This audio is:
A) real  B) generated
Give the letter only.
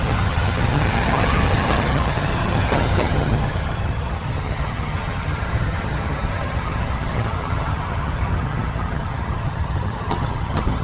B